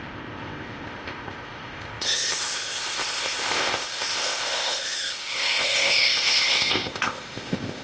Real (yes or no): no